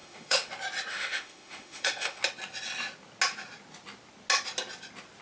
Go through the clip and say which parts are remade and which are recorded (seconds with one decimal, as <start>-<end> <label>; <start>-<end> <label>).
0.0-0.5 remade; 0.5-0.9 recorded; 0.9-2.2 remade; 2.2-5.2 recorded